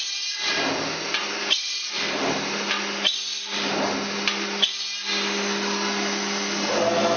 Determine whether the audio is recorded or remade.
recorded